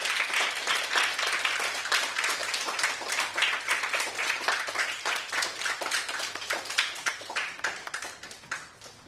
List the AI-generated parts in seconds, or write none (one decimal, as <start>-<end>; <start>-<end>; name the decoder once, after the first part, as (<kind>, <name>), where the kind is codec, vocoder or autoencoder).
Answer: none